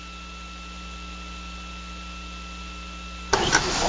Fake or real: fake